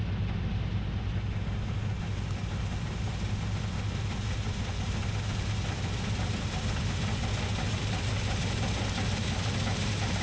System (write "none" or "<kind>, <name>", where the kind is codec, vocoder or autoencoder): none